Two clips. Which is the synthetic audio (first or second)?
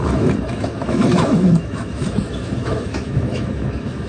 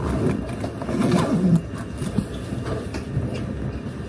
first